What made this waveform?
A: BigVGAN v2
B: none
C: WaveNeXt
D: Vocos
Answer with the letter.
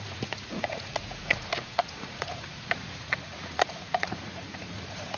D